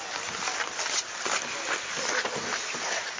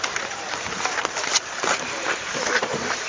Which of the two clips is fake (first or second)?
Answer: second